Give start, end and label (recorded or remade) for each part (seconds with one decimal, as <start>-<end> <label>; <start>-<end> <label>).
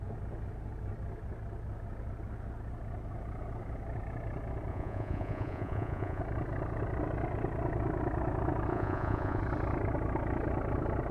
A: 0.0-4.7 recorded; 4.7-6.2 remade; 6.2-8.7 recorded; 8.7-9.4 remade; 9.4-11.1 recorded